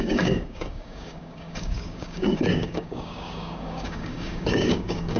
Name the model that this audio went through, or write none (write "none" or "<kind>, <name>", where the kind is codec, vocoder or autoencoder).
codec, DAC